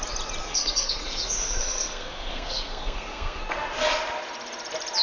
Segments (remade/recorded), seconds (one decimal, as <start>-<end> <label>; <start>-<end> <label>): 0.0-0.4 recorded; 0.4-3.4 remade; 3.4-5.0 recorded